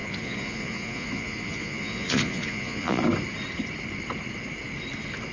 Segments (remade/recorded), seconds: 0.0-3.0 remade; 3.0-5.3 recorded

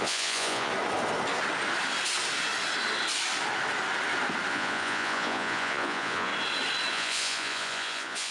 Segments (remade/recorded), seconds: 0.0-0.7 remade; 0.7-4.5 recorded; 4.5-6.3 remade; 6.3-6.9 recorded; 6.9-8.3 remade

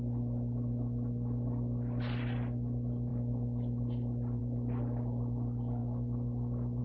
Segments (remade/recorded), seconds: 0.0-6.8 recorded

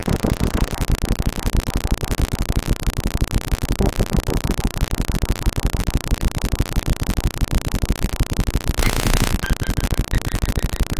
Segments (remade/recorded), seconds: 0.0-8.8 recorded; 8.8-9.3 remade; 9.3-11.0 recorded

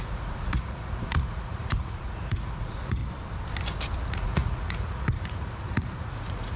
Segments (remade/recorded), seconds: 0.0-3.0 remade; 3.0-4.0 recorded; 4.0-6.6 remade

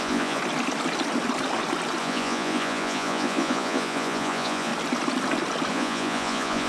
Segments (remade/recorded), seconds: 0.0-0.4 remade; 0.4-2.0 recorded; 2.0-4.7 remade; 4.7-5.7 recorded; 5.7-6.7 remade

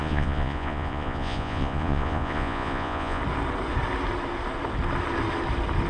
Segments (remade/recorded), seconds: 0.0-3.2 remade; 3.2-5.9 recorded

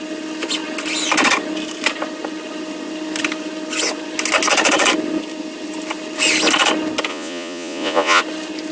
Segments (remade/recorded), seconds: 0.0-7.1 recorded; 7.1-8.2 remade; 8.2-8.7 recorded